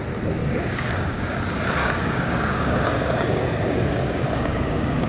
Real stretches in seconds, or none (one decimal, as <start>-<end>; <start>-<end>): 0.0-0.4; 1.4-1.8